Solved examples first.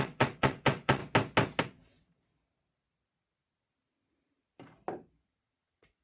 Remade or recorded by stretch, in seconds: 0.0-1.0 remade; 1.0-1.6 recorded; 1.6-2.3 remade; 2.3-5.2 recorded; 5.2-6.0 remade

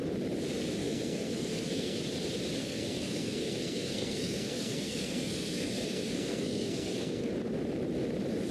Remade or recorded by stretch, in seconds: 0.0-0.8 recorded; 0.8-2.0 remade; 2.0-2.6 recorded; 2.6-7.3 remade; 7.3-8.5 recorded

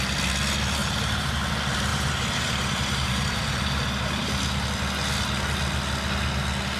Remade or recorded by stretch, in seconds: 0.0-0.8 recorded; 0.8-1.4 remade; 1.4-1.9 recorded; 1.9-4.3 remade; 4.3-6.8 recorded

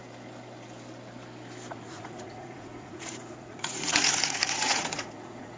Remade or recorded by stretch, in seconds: 0.0-1.7 recorded; 1.7-5.6 remade